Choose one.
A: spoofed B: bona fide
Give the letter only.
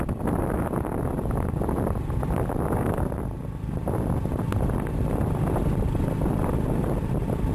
B